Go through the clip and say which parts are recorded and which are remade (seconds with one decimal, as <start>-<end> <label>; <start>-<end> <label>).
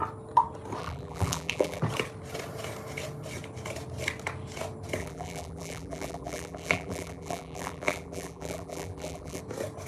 0.0-0.8 recorded; 0.8-1.8 remade; 1.8-5.0 recorded; 5.0-9.4 remade; 9.4-9.9 recorded